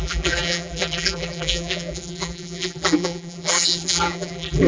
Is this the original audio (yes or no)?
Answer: no